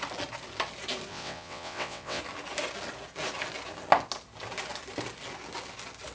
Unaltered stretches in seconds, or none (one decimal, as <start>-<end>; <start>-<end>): 0.0-1.1; 2.2-6.1